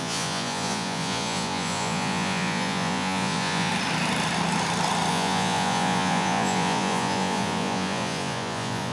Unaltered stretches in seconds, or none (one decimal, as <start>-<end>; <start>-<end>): 3.7-5.1